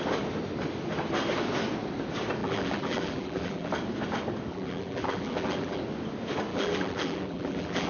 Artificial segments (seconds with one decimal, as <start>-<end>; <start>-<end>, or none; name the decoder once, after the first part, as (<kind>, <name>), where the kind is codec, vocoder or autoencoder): 2.4-3.7 (vocoder, BigVGAN v2); 4.5-5.8; 6.5-7.9

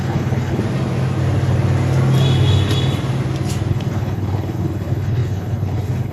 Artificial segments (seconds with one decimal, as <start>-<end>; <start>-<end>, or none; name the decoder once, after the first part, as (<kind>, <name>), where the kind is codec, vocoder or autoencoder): 0.0-0.6 (codec, HILCodec); 3.7-6.1

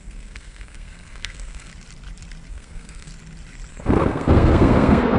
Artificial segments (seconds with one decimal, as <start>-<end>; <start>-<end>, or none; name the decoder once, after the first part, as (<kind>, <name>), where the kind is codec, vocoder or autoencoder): 0.0-1.7 (codec, SNAC); 2.5-3.1; 3.7-5.2

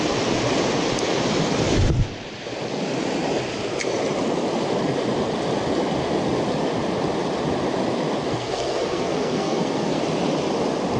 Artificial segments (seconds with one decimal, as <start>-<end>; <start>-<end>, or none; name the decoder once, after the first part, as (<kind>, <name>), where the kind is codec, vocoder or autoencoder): 8.3-10.0 (codec, SNAC)

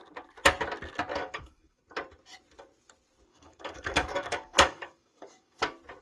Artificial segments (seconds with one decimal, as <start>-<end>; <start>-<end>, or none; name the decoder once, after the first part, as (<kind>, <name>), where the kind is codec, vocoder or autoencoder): 1.2-1.8 (codec, DAC); 3.3-5.6